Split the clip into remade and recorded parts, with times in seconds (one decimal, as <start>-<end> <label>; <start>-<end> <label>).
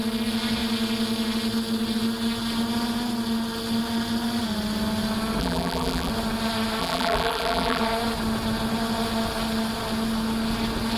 0.0-5.4 recorded; 5.4-6.1 remade; 6.1-6.8 recorded; 6.8-7.8 remade; 7.8-11.0 recorded